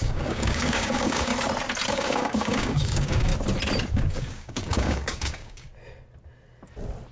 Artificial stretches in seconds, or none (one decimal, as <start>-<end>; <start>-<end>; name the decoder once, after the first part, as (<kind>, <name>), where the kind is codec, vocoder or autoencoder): 0.0-1.3 (codec, DAC); 1.9-3.3; 3.9-5.7